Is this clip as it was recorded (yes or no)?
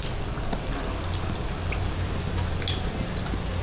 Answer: yes